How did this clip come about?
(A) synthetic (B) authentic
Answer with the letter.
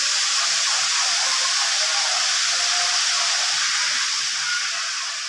B